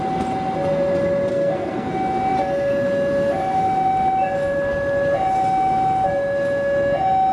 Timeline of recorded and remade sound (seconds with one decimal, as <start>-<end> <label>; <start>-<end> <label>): 0.0-1.3 recorded; 1.3-1.9 remade; 1.9-7.3 recorded